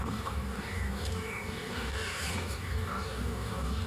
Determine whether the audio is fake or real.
fake